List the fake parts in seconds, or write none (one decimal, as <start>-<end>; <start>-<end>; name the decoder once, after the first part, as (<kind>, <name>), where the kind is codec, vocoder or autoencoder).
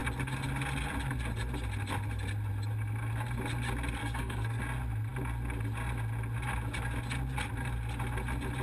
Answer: 4.0-4.6 (codec, SNAC)